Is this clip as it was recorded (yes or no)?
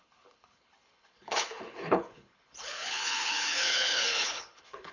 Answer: no